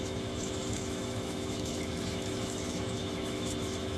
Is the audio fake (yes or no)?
yes